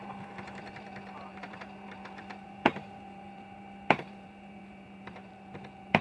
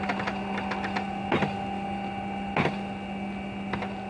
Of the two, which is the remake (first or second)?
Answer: first